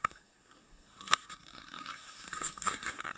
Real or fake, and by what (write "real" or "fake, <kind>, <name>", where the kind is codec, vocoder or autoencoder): fake, codec, SNAC